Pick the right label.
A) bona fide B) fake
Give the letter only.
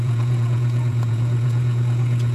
B